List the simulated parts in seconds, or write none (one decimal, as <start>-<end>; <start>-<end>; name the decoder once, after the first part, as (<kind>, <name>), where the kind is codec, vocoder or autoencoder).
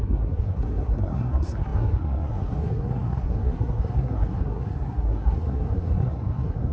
0.0-6.7 (codec, SNAC)